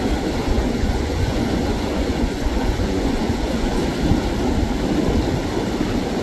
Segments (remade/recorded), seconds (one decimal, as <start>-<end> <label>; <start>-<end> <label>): 0.0-0.4 recorded; 0.4-3.8 remade; 3.8-6.2 recorded

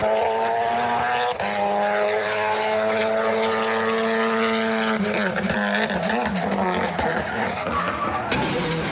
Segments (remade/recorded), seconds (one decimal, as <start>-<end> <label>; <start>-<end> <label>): 0.0-2.2 recorded; 2.2-3.0 remade; 3.0-8.9 recorded

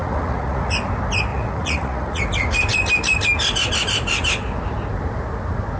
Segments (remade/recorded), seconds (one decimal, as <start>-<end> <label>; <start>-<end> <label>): 0.0-0.7 remade; 0.7-1.3 recorded; 1.3-2.2 remade; 2.2-5.8 recorded

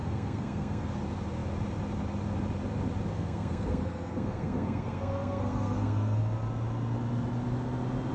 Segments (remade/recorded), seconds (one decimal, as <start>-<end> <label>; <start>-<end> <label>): 0.0-1.0 remade; 1.0-3.1 recorded; 3.1-6.2 remade; 6.2-8.1 recorded

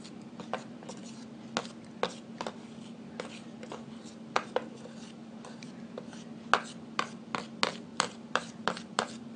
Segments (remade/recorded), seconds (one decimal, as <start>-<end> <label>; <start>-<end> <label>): 0.0-7.9 recorded; 7.9-8.6 remade; 8.6-9.4 recorded

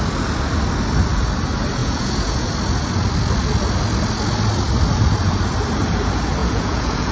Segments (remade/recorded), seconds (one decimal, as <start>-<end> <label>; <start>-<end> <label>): 0.0-1.8 recorded; 1.8-2.5 remade; 2.5-6.4 recorded; 6.4-7.1 remade

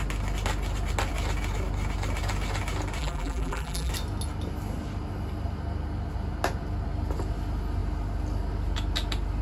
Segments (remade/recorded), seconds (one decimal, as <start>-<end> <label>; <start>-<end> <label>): 0.0-3.0 recorded; 3.0-3.9 remade; 3.9-9.4 recorded

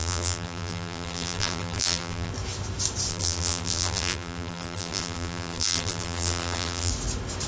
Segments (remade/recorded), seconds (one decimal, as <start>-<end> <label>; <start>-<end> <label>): 0.0-2.3 remade; 2.3-3.1 recorded; 3.1-6.9 remade; 6.9-7.5 recorded